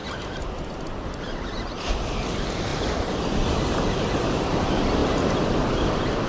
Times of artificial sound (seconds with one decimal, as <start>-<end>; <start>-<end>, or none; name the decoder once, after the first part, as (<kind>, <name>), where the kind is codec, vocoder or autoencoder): none